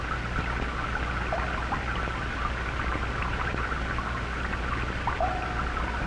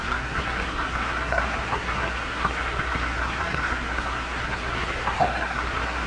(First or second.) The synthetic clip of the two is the second